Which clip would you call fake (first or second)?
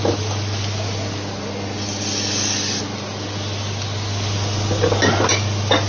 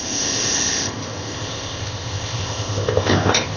second